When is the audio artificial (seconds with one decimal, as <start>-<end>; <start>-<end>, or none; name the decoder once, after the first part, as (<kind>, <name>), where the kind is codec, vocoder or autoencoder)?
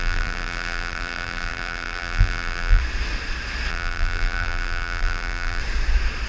0.0-2.8 (vocoder, BigVGAN v2); 3.7-5.6